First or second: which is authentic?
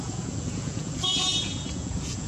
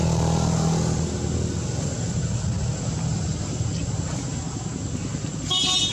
second